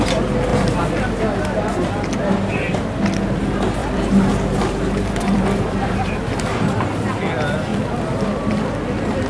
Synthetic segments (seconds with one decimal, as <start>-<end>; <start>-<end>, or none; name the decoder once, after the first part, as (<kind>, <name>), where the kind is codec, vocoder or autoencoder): 3.8-6.2 (vocoder, BigVGAN v2)